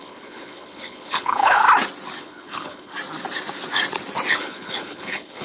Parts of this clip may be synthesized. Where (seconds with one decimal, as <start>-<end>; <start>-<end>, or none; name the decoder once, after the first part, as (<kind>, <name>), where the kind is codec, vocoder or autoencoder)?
0.0-1.6 (codec, HILCodec); 2.2-2.9; 4.3-5.4